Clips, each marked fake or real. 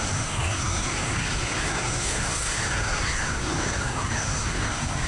fake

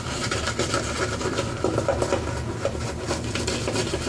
real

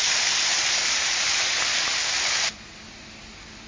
real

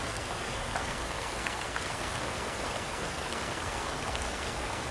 fake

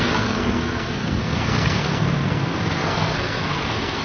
fake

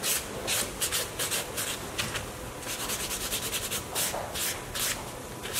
real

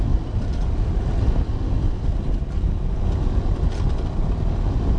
real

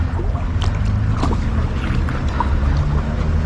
real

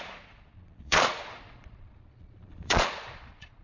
fake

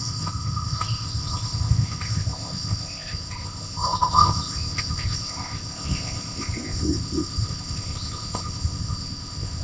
fake